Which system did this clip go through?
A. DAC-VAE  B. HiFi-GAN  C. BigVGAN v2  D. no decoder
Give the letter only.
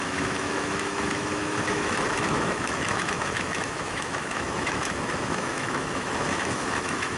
A